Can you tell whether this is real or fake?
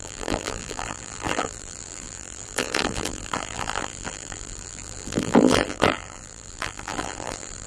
fake